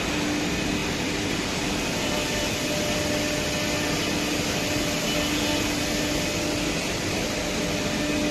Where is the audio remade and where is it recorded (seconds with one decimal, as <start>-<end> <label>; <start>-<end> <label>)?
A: 0.0-8.3 recorded